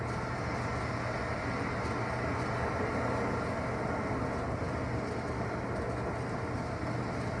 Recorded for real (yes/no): yes